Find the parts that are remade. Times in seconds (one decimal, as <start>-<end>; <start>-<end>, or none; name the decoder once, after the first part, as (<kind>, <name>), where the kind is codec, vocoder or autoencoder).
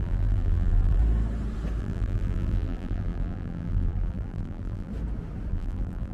0.0-1.0 (vocoder, BigVGAN v2); 1.8-4.9; 5.5-6.1